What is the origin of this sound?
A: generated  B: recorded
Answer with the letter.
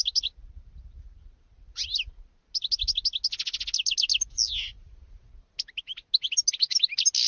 B